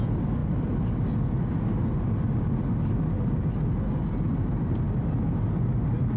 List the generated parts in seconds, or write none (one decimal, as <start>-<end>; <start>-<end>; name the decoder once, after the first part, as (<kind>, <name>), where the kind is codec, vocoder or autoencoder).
none